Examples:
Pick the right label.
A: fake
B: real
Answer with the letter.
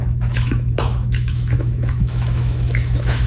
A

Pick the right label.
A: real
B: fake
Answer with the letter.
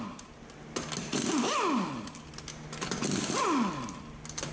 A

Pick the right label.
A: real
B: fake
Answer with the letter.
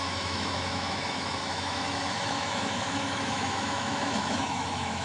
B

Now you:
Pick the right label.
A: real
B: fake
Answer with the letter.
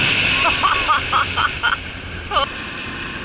A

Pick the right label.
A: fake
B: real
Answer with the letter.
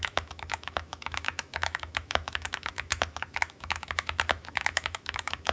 A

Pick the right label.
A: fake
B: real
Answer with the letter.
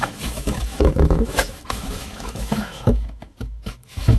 A